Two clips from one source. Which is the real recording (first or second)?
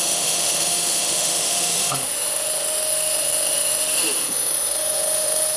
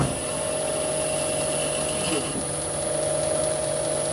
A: second